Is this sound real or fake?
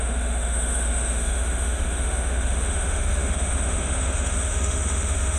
fake